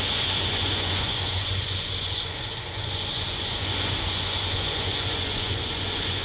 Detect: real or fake fake